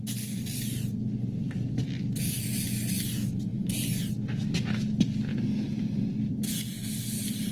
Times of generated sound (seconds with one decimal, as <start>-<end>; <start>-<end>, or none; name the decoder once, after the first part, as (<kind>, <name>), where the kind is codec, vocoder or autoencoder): 3.5-4.4 (vocoder, BigVGAN v2)